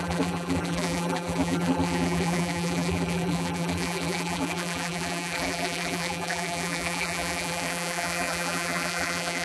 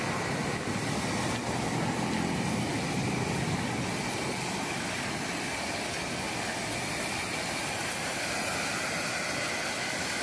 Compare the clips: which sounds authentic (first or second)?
second